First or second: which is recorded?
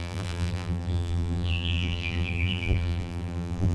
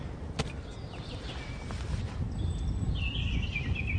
second